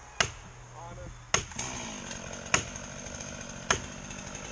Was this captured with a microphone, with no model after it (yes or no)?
yes